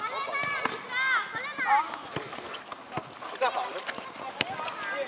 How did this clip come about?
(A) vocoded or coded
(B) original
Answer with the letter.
B